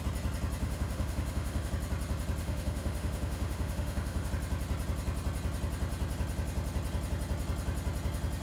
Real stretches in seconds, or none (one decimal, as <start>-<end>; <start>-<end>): 0.0-0.6; 1.7-2.4; 4.3-8.4